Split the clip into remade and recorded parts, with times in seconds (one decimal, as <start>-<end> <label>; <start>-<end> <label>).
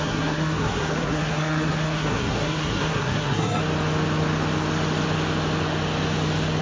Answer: 0.0-3.6 remade; 3.6-6.6 recorded